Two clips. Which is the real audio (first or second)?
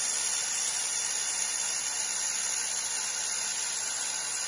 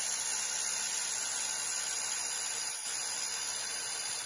second